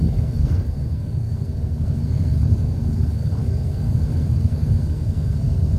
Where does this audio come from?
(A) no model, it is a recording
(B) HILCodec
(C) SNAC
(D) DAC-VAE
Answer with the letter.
C